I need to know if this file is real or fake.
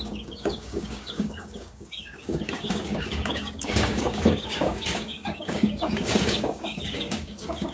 fake